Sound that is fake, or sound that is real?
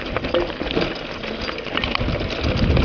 real